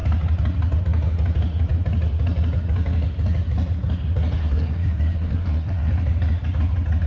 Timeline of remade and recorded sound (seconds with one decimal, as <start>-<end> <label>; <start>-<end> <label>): 0.0-4.4 recorded; 4.4-5.9 remade; 5.9-7.1 recorded